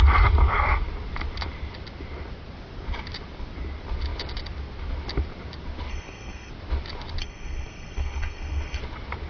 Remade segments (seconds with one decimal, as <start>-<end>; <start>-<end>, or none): 5.9-6.5; 7.2-8.8